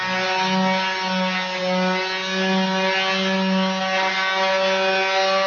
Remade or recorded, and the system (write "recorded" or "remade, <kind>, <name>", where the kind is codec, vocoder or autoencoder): recorded